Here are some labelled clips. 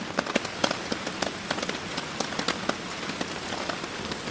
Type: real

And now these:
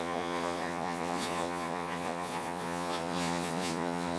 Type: fake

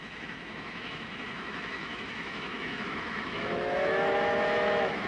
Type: fake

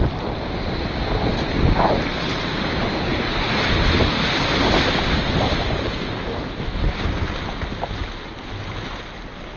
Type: real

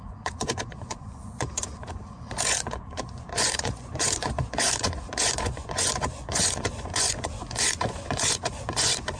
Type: fake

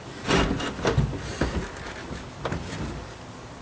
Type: real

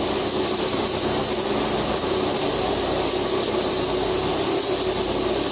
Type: real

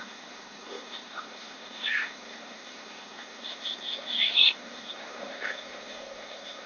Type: fake